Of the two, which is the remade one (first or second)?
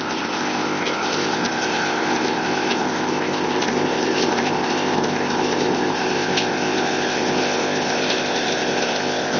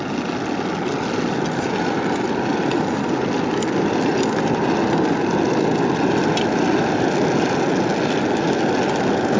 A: first